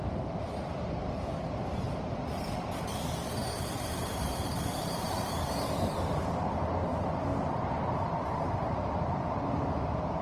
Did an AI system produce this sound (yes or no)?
no